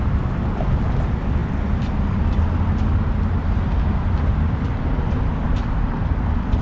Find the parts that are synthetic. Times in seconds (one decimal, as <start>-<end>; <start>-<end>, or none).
none